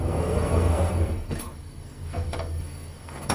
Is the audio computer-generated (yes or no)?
yes